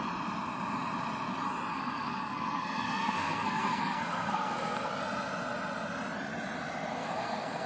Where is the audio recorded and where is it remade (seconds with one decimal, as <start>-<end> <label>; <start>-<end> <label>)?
0.0-1.7 recorded; 1.7-4.9 remade; 4.9-7.0 recorded; 7.0-7.7 remade